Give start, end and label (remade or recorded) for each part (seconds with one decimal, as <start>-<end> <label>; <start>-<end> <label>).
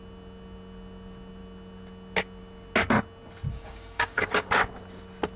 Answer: 0.0-3.5 recorded; 3.5-4.5 remade; 4.5-5.4 recorded